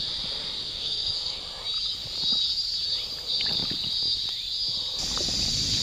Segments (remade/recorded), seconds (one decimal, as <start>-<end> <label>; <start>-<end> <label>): 0.0-0.7 recorded; 0.7-1.4 remade; 1.4-5.8 recorded